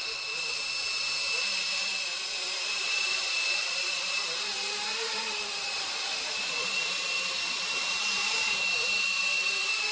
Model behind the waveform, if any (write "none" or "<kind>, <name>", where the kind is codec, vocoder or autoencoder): vocoder, BigVGAN v2